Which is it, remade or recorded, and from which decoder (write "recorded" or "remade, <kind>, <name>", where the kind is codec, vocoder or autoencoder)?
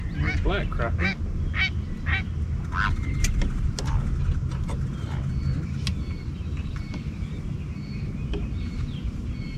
recorded